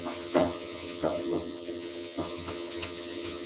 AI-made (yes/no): yes